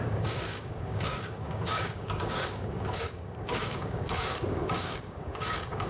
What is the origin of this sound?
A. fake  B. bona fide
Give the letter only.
A